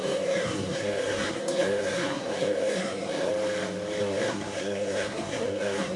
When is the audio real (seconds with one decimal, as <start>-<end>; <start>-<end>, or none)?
3.3-4.0